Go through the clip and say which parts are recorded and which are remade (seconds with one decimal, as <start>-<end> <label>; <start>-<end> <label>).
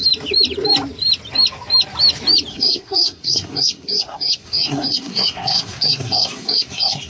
0.0-2.5 recorded; 2.5-7.1 remade